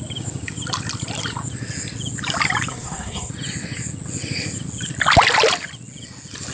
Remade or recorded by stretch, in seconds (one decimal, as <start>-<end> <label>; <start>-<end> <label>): 0.0-2.7 recorded; 2.7-3.3 remade; 3.3-6.5 recorded